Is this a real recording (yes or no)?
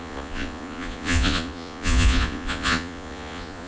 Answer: no